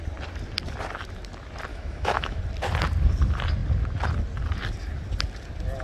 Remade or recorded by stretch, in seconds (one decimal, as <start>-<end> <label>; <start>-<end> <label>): 0.0-1.7 recorded; 1.7-2.4 remade; 2.4-5.8 recorded